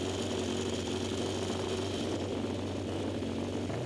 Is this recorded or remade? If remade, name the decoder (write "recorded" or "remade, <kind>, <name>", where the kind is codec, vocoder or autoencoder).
recorded